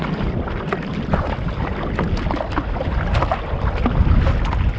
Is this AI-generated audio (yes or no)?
no